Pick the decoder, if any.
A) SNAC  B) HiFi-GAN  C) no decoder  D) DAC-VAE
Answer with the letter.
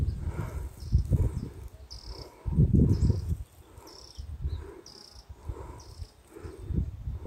C